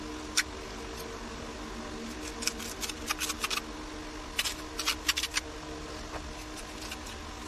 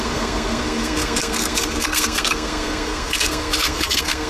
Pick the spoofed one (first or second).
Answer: second